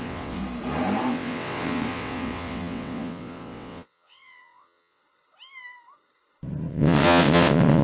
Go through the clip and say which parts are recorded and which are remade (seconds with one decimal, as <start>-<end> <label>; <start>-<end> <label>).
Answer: 0.0-0.4 remade; 0.4-1.1 recorded; 1.1-5.0 remade; 5.0-6.7 recorded; 6.7-7.8 remade